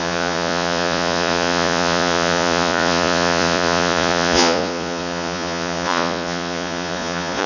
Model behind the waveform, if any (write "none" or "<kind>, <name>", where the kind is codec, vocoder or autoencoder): vocoder, Vocos